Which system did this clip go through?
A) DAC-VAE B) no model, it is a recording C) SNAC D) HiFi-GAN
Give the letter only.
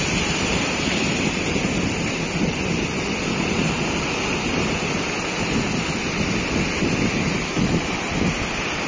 B